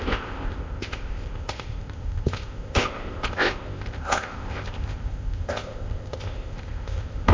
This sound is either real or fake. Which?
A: fake